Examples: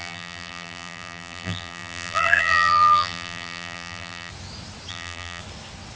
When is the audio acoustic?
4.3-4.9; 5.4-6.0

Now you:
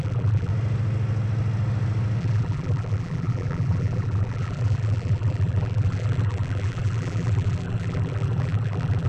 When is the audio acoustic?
0.5-2.2

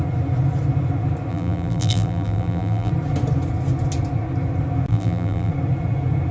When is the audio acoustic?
0.0-1.3; 2.9-4.9; 5.5-6.3

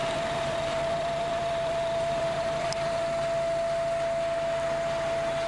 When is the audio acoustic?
3.0-5.5

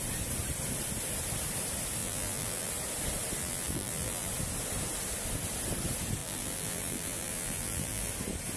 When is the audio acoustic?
0.0-2.0; 2.7-3.4; 4.3-6.2; 8.1-8.6